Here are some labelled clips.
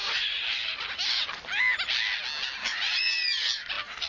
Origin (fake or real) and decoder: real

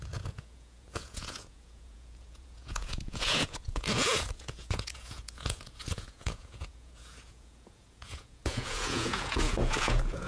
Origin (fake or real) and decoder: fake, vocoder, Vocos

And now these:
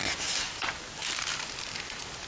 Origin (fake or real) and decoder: real